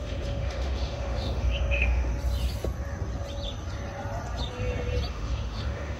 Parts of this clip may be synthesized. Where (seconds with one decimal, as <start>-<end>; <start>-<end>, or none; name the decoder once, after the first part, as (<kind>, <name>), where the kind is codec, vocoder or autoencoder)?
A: 0.0-2.1 (autoencoder, DAC-VAE); 5.1-6.0